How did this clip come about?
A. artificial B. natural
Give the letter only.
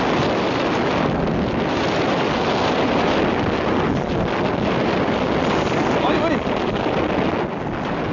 B